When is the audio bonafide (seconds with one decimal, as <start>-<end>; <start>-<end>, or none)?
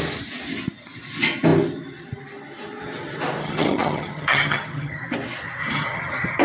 0.0-3.4; 5.0-5.6